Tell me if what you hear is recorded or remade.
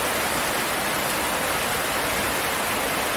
recorded